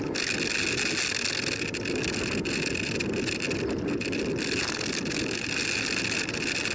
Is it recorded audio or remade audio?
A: recorded